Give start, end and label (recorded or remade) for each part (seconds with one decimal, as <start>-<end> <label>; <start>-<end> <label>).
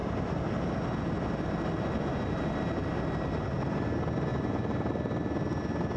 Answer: 0.0-6.0 recorded